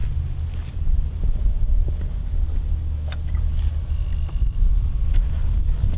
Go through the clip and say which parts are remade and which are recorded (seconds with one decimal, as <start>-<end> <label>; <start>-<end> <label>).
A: 0.0-6.0 recorded